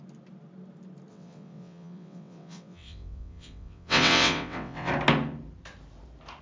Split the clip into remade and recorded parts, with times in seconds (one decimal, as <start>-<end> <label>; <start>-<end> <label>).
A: 0.0-1.1 recorded; 1.1-4.9 remade; 4.9-6.4 recorded